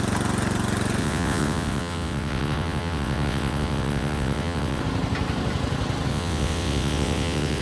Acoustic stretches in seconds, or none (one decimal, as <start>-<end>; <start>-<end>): 0.0-1.0; 4.8-6.1